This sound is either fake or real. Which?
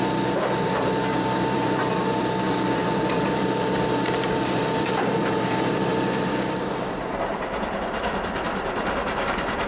fake